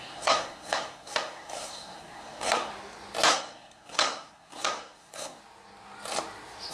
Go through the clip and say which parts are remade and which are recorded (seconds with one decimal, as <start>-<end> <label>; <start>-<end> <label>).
0.0-2.7 remade; 2.7-3.3 recorded; 3.3-5.4 remade; 5.4-6.7 recorded